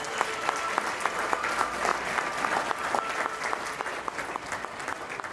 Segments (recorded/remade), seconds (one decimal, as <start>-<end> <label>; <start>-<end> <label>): 0.0-5.3 recorded